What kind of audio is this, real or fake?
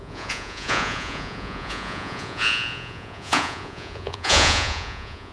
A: fake